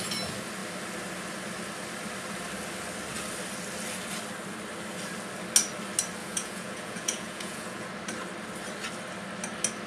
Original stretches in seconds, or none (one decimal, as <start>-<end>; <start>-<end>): 0.0-6.2; 7.9-9.9